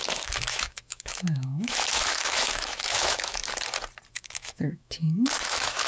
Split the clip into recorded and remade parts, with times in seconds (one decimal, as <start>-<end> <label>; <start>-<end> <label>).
0.0-3.4 remade; 3.4-4.1 recorded; 4.1-5.9 remade

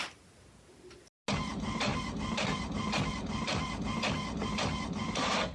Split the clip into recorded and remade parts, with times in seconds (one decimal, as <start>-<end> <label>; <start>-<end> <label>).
0.0-5.5 recorded

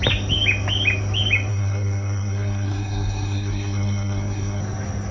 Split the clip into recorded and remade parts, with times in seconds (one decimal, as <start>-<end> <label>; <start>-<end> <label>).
0.0-1.5 recorded; 1.5-4.6 remade; 4.6-5.1 recorded

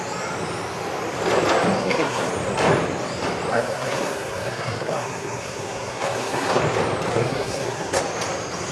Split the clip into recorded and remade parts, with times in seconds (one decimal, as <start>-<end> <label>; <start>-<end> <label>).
0.0-1.8 recorded; 1.8-2.3 remade; 2.3-3.5 recorded; 3.5-6.6 remade; 6.6-7.1 recorded; 7.1-8.0 remade; 8.0-8.7 recorded

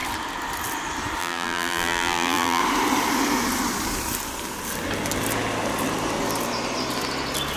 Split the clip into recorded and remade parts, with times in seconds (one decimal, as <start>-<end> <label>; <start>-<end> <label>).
0.0-1.2 recorded; 1.2-2.6 remade; 2.6-7.6 recorded

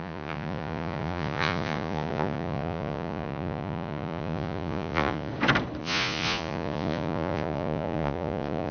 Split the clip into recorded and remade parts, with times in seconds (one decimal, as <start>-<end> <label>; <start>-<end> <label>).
0.0-5.3 remade; 5.3-5.8 recorded; 5.8-8.7 remade

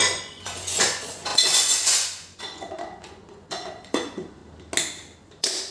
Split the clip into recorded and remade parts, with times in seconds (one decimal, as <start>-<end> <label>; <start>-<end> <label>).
0.0-4.4 remade; 4.4-5.2 recorded; 5.2-5.7 remade

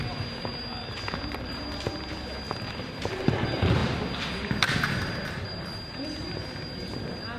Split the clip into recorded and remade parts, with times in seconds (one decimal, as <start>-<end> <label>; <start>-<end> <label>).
0.0-0.5 remade; 0.5-2.7 recorded; 2.7-7.4 remade